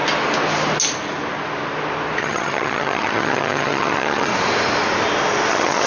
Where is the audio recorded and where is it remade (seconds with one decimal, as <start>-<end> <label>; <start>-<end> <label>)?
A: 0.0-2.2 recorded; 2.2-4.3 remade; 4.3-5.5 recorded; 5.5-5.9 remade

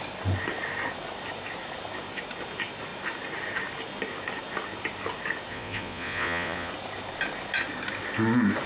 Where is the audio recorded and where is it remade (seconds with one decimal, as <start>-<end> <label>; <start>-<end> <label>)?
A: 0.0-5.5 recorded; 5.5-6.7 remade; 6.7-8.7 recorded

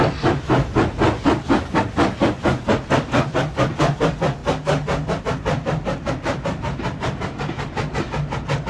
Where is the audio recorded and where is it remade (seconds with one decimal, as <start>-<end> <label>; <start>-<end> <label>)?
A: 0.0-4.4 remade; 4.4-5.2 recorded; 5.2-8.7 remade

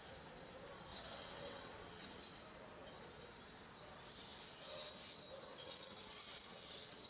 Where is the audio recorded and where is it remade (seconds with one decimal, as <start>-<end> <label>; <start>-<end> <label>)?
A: 0.0-0.9 recorded; 0.9-2.2 remade; 2.2-5.5 recorded; 5.5-7.1 remade

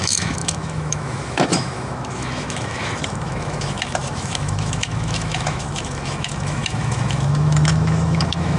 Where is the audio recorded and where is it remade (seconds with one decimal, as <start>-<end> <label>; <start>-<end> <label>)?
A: 0.0-8.6 remade

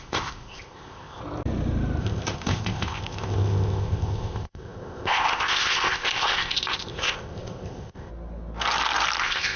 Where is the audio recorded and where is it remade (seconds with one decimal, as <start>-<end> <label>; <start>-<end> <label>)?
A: 0.0-1.2 remade; 1.2-2.0 recorded; 2.0-8.1 remade; 8.1-9.2 recorded; 9.2-9.6 remade

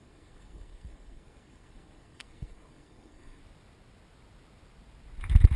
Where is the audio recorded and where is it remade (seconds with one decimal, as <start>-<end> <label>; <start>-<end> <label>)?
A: 0.0-3.4 remade; 3.4-5.6 recorded